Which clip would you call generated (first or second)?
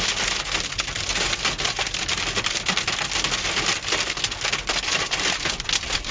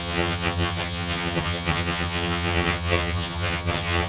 second